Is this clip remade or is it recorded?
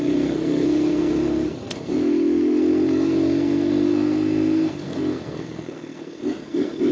remade